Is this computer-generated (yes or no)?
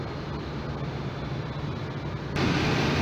no